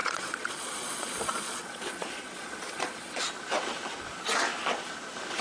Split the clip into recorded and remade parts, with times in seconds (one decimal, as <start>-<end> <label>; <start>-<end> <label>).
0.0-3.2 remade; 3.2-5.4 recorded